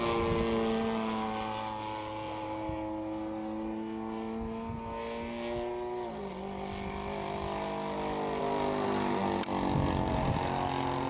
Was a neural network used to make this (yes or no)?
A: no